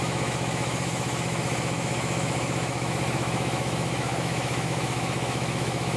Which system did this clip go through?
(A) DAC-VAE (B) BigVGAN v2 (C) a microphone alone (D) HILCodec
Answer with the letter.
A